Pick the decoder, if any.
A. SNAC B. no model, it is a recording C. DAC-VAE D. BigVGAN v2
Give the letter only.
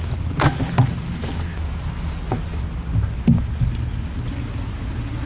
B